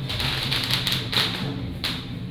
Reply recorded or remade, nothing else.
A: recorded